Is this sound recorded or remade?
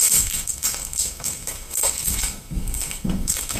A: remade